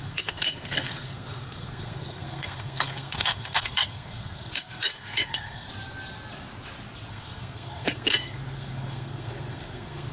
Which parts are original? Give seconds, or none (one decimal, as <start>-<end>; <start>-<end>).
5.7-7.1